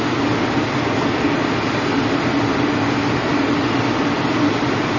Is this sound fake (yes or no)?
no